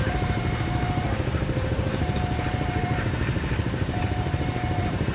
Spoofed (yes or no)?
yes